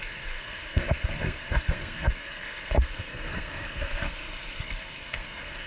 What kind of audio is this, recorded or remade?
remade